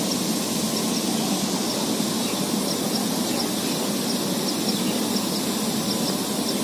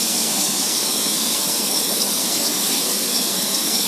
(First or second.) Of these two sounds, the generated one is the second